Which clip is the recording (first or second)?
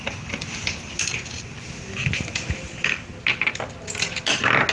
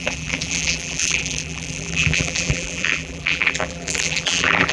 first